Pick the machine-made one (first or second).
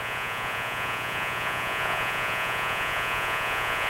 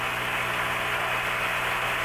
first